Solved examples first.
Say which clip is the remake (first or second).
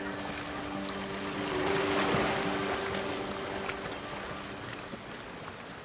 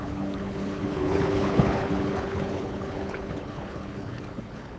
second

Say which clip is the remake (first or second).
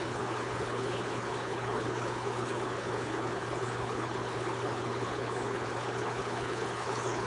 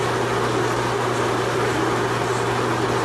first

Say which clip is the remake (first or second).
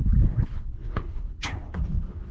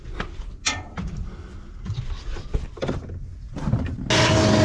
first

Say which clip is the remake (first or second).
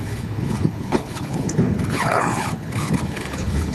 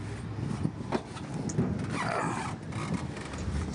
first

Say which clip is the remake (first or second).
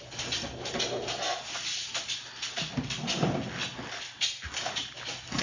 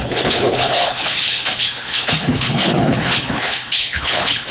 second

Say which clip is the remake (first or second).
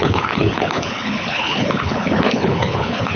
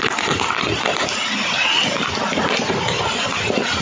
first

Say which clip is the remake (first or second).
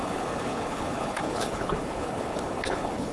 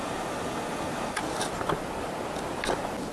first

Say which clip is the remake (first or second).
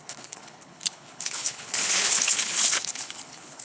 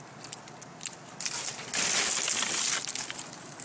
first